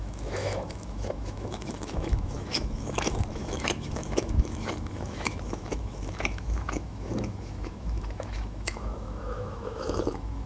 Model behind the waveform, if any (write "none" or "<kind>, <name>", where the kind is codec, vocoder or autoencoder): autoencoder, DAC-VAE